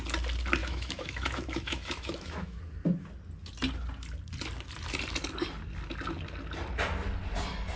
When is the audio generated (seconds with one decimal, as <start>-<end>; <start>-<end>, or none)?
0.6-2.6